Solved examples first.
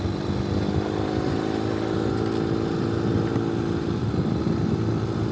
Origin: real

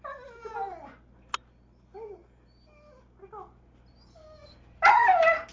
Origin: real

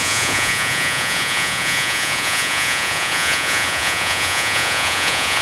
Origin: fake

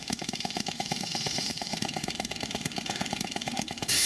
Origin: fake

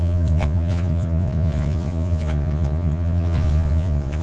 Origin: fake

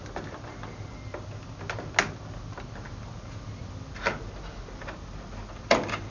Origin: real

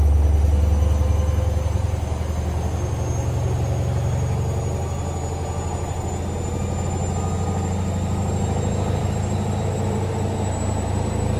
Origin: real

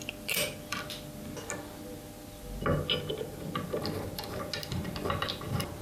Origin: real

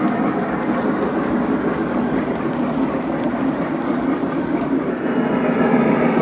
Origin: real